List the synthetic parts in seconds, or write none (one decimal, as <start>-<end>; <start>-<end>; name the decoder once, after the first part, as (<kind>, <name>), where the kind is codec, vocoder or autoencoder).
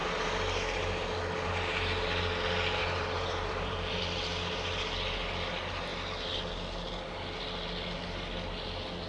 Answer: 2.8-4.0 (vocoder, BigVGAN v2)